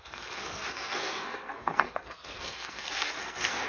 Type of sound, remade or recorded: remade